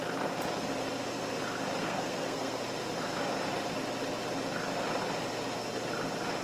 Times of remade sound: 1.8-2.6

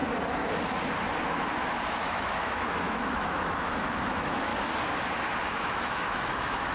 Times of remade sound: 1.9-4.5; 5.5-6.7

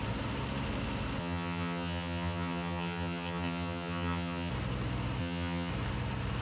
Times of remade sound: 1.2-4.5; 5.2-5.7

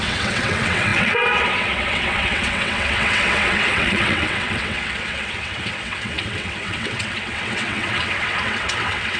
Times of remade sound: 0.0-9.2

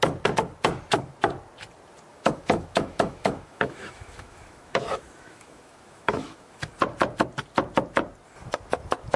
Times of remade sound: 2.1-6.7

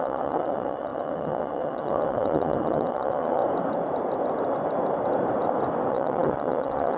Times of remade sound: 0.0-3.4; 5.9-7.0